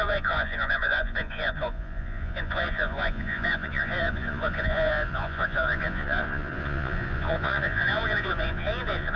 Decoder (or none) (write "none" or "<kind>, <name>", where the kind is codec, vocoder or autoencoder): vocoder, Vocos